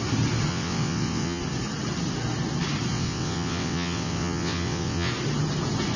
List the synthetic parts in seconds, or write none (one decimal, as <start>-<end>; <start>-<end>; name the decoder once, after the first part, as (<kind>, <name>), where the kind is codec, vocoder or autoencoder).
0.5-1.4 (vocoder, WaveNeXt); 2.9-5.1

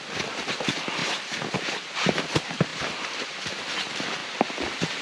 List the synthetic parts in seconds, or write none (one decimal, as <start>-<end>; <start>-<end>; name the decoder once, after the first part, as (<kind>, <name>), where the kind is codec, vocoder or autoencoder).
none

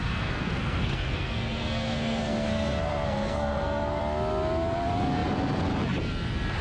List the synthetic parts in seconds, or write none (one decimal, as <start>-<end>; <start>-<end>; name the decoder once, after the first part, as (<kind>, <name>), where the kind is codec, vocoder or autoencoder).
0.0-4.0 (codec, SNAC)

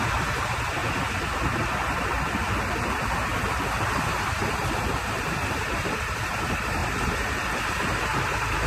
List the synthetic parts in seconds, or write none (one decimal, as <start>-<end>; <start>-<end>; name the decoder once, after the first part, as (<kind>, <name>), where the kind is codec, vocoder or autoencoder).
0.0-0.8 (vocoder, BigVGAN v2); 1.4-8.7

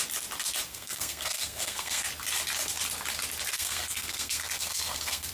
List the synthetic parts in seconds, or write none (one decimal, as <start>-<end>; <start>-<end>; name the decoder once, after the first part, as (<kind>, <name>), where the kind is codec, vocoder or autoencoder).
0.7-2.1 (codec, SNAC); 3.5-5.3